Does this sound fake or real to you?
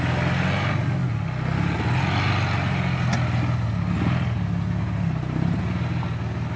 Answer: real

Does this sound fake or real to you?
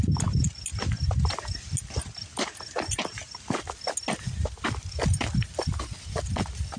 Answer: real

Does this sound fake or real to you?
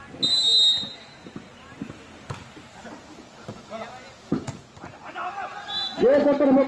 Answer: real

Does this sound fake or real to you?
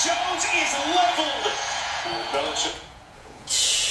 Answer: fake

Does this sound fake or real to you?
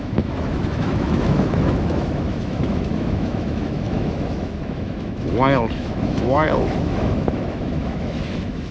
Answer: fake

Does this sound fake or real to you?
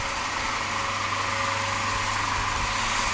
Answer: real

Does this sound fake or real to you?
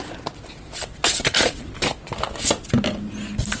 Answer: real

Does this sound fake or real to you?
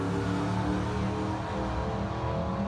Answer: real